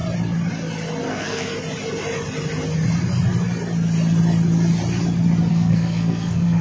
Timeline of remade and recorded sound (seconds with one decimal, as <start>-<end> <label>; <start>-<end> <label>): 0.0-1.1 recorded; 1.1-1.5 remade; 1.5-5.5 recorded; 5.5-6.6 remade